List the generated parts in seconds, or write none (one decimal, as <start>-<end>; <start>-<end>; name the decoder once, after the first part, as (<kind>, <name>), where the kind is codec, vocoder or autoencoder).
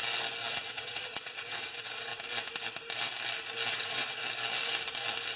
0.5-2.1 (vocoder, WaveNeXt); 3.7-4.2